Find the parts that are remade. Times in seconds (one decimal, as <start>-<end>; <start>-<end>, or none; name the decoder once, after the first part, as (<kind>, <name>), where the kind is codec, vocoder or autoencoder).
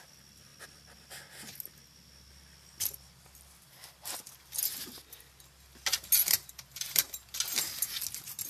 6.2-7.4 (vocoder, BigVGAN v2)